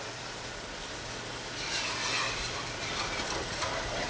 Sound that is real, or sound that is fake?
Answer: real